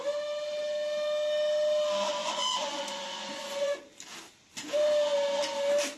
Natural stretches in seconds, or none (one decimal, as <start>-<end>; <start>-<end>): 0.0-2.2; 3.8-6.0